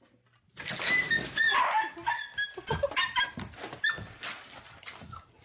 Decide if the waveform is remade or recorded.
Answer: recorded